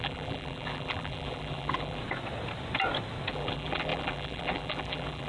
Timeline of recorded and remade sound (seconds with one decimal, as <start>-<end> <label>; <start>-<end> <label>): 0.0-2.0 remade; 2.0-3.3 recorded; 3.3-5.3 remade